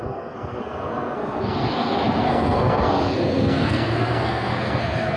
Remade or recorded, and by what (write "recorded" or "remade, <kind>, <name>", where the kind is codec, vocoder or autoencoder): remade, codec, SNAC